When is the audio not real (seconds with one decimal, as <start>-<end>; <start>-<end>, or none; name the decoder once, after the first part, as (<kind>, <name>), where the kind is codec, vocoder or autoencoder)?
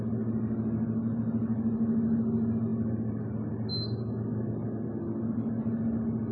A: none